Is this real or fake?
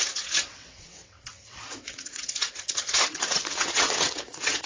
fake